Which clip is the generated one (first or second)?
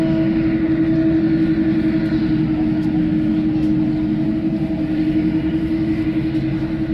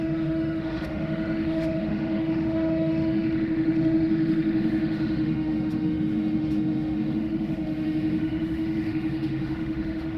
second